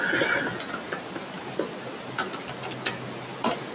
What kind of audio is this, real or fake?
real